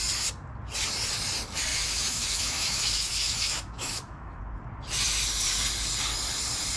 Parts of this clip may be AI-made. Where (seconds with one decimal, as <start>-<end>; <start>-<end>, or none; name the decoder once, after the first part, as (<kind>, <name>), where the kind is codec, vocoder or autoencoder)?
1.7-4.4 (autoencoder, DAC-VAE)